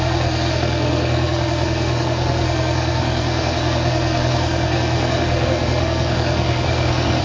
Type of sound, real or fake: fake